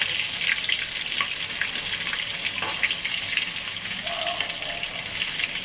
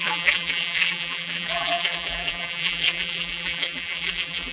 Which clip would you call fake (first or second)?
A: second